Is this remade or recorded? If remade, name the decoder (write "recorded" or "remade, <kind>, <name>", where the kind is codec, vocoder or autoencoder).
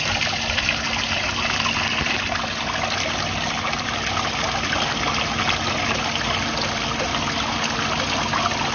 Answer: recorded